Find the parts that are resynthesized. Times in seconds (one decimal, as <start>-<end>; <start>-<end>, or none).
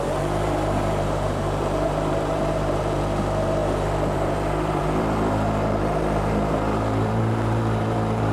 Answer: 0.0-8.3